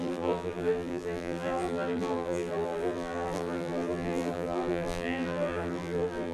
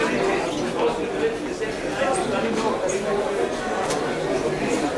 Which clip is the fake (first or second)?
first